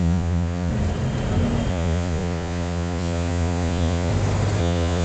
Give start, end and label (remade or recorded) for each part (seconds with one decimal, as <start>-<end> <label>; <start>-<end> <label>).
0.0-0.7 remade; 0.7-1.7 recorded; 1.7-4.1 remade; 4.1-4.6 recorded; 4.6-5.0 remade